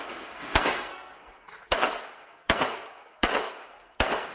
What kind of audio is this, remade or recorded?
remade